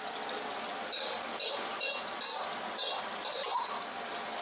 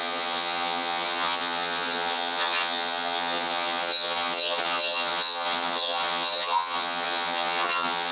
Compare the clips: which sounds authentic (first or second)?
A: first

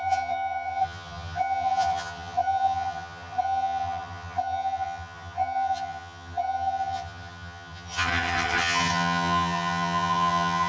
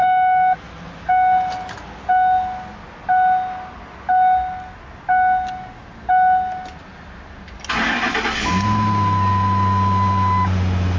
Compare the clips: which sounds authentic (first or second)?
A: second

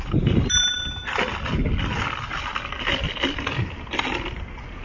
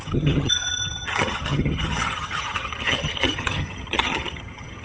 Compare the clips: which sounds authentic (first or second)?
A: first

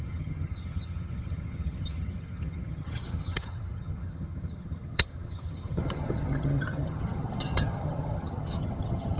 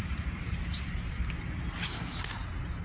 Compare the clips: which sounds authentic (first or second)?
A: second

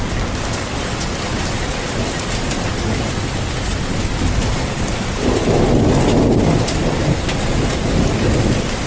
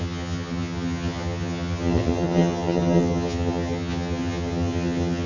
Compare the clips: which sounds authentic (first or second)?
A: first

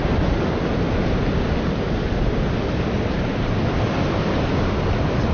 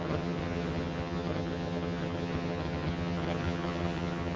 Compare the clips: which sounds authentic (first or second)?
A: first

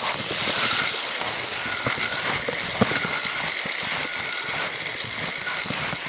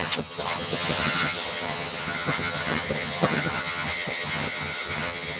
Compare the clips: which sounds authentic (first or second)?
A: first